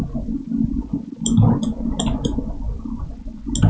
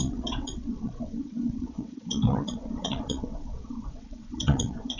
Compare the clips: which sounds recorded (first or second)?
first